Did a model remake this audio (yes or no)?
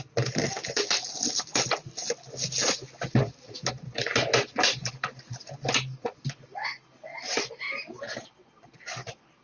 no